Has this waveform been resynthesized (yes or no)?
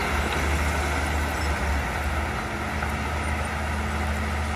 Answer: no